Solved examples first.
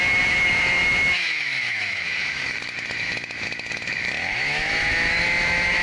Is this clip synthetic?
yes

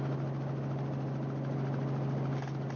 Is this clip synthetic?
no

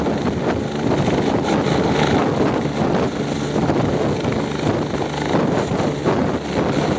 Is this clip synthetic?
no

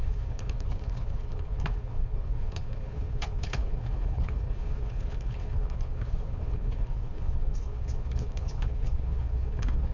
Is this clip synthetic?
yes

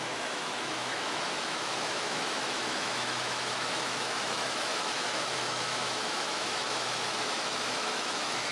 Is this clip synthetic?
yes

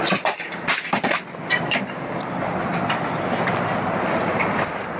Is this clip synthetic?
yes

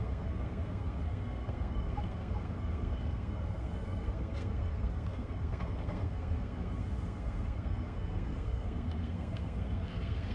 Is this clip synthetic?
yes